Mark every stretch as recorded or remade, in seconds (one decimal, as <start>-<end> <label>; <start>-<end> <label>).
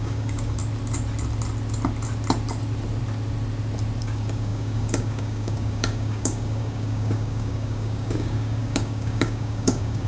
0.0-0.6 remade; 0.6-4.0 recorded; 4.0-10.1 remade